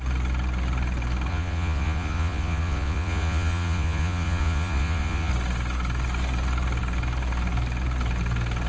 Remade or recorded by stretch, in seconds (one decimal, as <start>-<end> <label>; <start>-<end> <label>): 0.0-1.3 recorded; 1.3-5.3 remade; 5.3-8.7 recorded